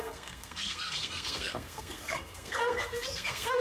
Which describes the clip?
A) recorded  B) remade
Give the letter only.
B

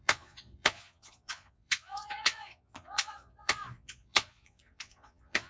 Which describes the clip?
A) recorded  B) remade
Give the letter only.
B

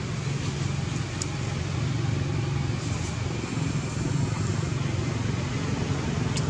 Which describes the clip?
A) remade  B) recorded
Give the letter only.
B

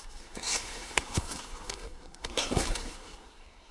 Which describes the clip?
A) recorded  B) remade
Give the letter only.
B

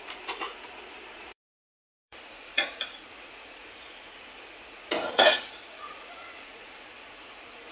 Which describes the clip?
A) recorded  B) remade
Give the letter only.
B